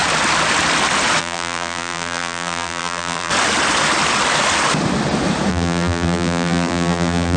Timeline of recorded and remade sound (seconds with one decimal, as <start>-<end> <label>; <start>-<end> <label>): 0.0-1.2 recorded; 1.2-3.3 remade; 3.3-5.5 recorded; 5.5-7.4 remade